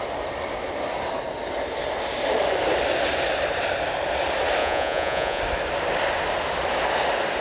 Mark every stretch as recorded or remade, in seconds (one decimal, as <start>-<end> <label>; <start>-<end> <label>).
0.0-4.6 recorded; 4.6-5.4 remade; 5.4-7.4 recorded